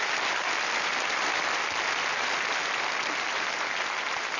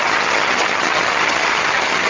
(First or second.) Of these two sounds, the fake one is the second